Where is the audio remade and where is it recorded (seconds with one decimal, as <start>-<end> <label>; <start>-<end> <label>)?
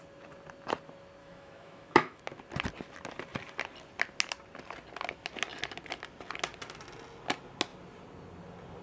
0.0-1.2 recorded; 1.2-2.2 remade; 2.2-8.8 recorded